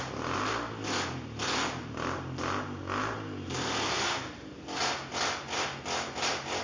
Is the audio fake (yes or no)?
no